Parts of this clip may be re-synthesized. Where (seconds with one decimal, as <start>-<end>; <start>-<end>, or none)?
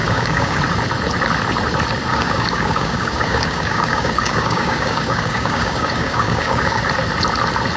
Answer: 0.0-0.6; 2.1-6.8